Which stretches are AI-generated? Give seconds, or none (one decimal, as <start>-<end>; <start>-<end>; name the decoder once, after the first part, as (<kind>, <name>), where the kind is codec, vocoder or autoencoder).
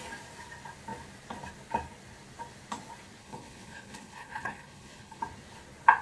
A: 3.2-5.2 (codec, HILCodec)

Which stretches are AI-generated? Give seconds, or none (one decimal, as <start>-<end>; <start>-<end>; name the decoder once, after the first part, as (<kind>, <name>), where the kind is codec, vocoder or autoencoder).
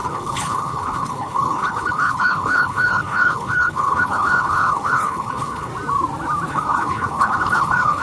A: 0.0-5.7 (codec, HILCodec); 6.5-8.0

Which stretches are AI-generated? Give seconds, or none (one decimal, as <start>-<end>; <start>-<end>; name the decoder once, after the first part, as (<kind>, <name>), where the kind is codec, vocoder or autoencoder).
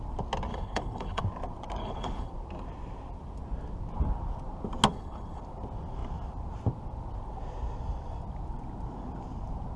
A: 0.5-1.2 (codec, HILCodec); 1.8-2.3; 4.9-5.4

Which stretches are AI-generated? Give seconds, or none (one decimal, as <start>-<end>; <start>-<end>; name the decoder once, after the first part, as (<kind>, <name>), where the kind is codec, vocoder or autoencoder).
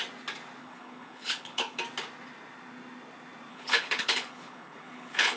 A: 0.6-1.8 (codec, HILCodec); 3.5-5.4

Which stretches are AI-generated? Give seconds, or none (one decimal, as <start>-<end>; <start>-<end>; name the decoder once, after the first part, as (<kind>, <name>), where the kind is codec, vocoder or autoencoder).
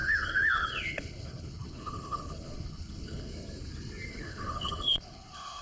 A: 0.0-3.3 (codec, HILCodec); 4.1-5.6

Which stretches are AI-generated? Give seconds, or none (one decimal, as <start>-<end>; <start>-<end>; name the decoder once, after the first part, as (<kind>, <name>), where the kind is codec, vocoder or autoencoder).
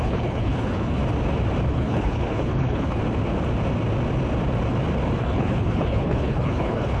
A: 0.0-1.0 (codec, HILCodec); 1.7-3.0; 5.2-7.0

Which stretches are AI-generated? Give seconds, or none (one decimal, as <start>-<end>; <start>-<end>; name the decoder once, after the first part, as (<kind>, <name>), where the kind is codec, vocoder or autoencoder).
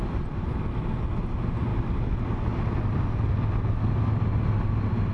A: none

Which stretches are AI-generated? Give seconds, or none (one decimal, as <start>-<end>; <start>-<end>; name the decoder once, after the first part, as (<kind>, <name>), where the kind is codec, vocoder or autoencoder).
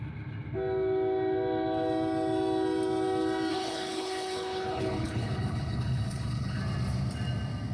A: 3.5-6.6 (codec, HILCodec)